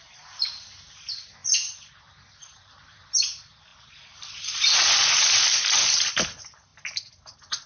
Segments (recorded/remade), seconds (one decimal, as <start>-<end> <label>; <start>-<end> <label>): 0.0-7.7 recorded